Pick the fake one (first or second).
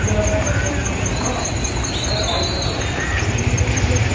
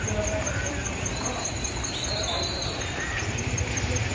second